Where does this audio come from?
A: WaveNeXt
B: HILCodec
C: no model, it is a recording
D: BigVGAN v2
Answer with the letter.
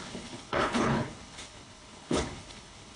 B